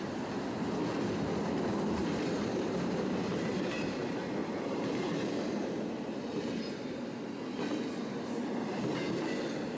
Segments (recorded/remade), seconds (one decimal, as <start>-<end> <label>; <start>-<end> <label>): 0.0-1.7 recorded; 1.7-4.0 remade; 4.0-4.4 recorded; 4.4-6.7 remade; 6.7-9.8 recorded